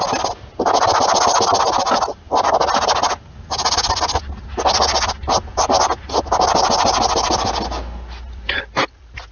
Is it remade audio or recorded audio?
recorded